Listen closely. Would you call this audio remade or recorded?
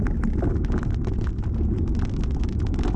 recorded